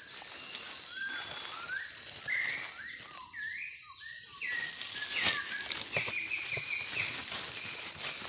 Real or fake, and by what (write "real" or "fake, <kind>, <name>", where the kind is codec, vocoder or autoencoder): real